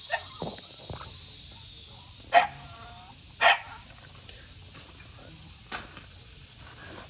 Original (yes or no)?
yes